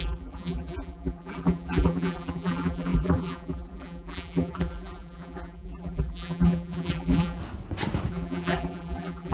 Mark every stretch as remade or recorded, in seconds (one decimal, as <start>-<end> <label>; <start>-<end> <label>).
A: 0.0-7.4 remade; 7.4-8.1 recorded; 8.1-9.3 remade